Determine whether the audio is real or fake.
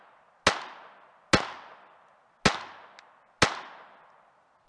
real